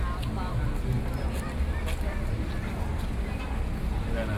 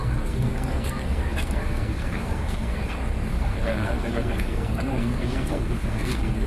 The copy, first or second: second